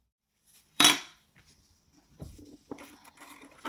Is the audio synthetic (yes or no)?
yes